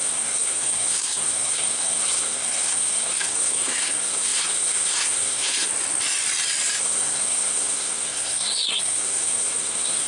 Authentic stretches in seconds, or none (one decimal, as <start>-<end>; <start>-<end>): 5.7-6.8